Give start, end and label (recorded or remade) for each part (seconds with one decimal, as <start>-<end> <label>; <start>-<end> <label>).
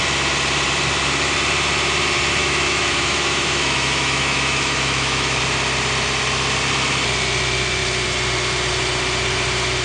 0.0-2.4 recorded; 2.4-5.4 remade; 5.4-9.8 recorded